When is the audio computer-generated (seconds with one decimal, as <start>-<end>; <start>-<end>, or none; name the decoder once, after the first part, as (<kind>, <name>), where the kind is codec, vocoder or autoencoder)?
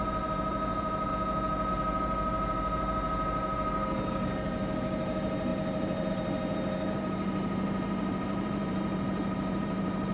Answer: 0.0-1.1 (vocoder, BigVGAN v2); 1.7-10.1